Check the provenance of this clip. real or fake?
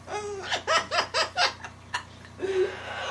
real